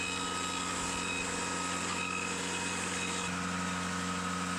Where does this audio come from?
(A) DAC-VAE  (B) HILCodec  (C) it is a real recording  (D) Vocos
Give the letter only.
C